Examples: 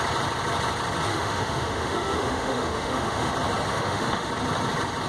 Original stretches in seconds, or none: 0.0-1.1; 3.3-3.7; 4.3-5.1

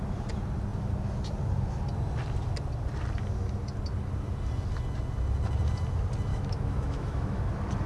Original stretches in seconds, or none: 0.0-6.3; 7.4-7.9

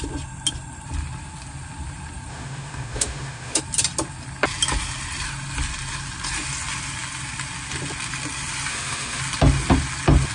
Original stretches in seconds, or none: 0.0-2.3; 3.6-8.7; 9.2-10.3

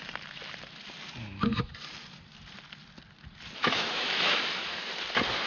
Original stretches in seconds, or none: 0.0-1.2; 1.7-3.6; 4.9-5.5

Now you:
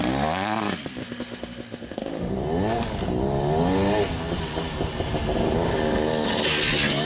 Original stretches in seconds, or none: 0.0-1.0; 2.3-7.1

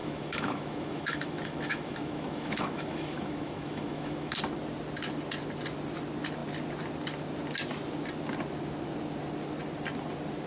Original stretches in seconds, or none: 4.4-10.5

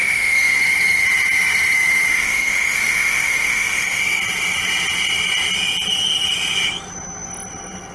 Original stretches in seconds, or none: 0.6-2.1; 4.0-7.9

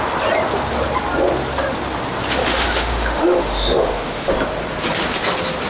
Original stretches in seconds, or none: 0.0-2.4; 4.3-5.7